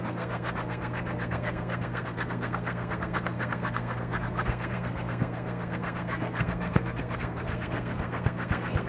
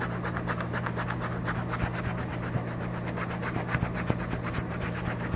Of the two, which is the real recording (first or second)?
second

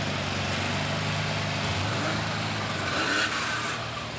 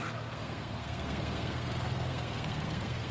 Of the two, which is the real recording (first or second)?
first